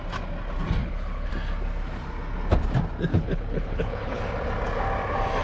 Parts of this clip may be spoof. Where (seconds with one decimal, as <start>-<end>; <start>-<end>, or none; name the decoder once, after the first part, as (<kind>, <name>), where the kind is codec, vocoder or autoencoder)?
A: 0.8-1.3 (codec, HILCodec); 3.1-4.2